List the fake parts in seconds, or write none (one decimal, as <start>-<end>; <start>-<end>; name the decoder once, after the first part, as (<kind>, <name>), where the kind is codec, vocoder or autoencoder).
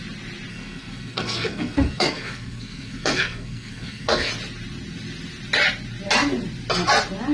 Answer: 0.5-4.3 (codec, SNAC)